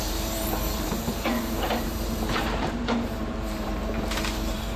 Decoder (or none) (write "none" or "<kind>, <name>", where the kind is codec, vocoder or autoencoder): vocoder, BigVGAN v2